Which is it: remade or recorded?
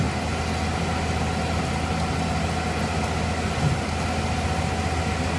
recorded